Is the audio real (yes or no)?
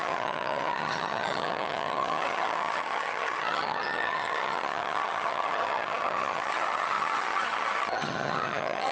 no